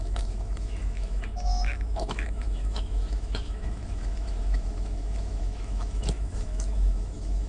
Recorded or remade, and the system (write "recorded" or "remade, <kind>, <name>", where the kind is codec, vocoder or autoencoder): remade, autoencoder, DAC-VAE